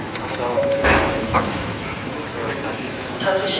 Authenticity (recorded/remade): remade